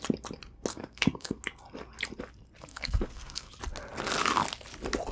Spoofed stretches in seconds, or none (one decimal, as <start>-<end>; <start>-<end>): 0.7-1.4; 2.7-3.5